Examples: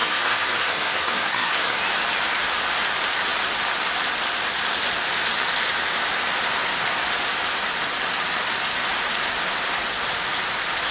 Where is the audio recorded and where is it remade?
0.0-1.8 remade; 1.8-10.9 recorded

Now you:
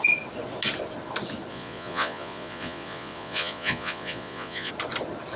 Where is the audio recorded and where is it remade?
0.0-1.5 recorded; 1.5-4.7 remade; 4.7-5.4 recorded

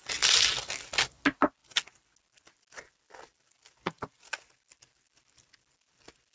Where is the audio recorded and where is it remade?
0.0-6.3 recorded

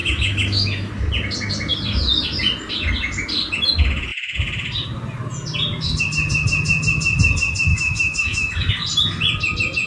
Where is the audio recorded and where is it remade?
0.0-0.9 remade; 0.9-7.7 recorded; 7.7-8.7 remade; 8.7-9.9 recorded

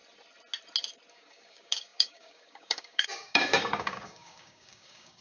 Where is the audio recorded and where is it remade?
0.0-1.1 recorded; 1.1-5.2 remade

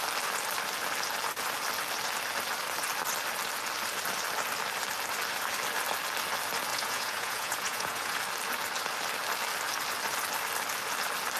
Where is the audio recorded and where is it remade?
0.0-6.7 recorded; 6.7-8.2 remade; 8.2-11.4 recorded

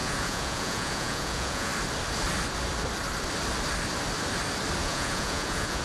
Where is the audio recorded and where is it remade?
0.0-1.7 remade; 1.7-4.8 recorded; 4.8-5.8 remade